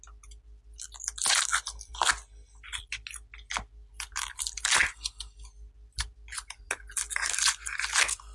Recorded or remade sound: recorded